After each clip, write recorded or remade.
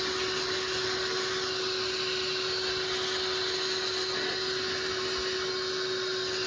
recorded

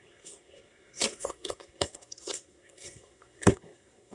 remade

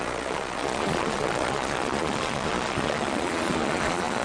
remade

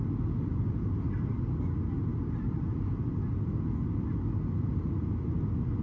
recorded